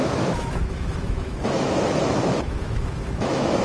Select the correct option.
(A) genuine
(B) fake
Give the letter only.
B